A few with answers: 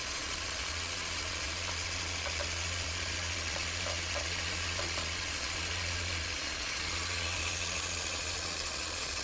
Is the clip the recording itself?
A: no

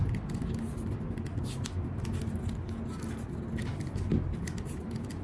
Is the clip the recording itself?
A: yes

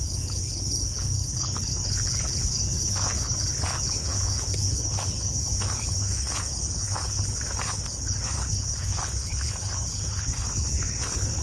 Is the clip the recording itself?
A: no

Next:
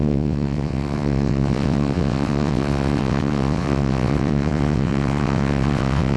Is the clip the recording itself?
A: no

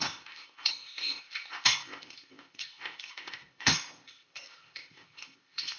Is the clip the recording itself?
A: no